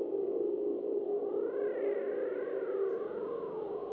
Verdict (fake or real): fake